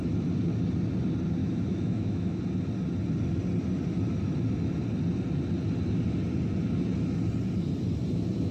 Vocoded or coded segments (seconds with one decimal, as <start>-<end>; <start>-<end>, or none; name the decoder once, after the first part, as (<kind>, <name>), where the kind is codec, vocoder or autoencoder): 1.4-2.4 (autoencoder, DAC-VAE)

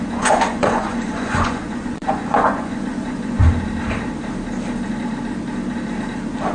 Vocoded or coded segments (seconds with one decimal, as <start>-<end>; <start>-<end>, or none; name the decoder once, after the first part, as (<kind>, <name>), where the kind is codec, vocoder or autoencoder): 0.0-3.4 (vocoder, Vocos)

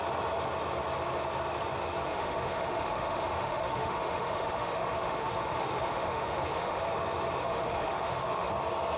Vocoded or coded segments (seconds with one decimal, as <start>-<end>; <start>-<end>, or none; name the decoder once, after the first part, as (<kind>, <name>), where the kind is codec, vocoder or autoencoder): 2.1-6.8 (autoencoder, DAC-VAE); 7.4-8.5

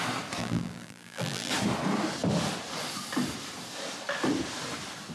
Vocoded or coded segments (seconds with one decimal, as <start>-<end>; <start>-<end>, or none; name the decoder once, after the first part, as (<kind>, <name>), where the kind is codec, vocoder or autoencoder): 0.4-1.5 (vocoder, BigVGAN v2)

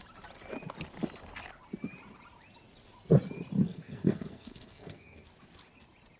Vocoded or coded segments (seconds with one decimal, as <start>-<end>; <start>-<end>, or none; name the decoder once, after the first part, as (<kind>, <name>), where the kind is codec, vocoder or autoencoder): 3.7-5.3 (codec, SNAC)